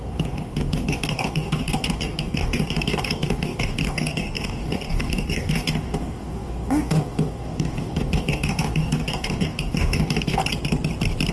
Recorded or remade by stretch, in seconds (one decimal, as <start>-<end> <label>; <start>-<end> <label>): 0.0-10.4 remade; 10.4-11.3 recorded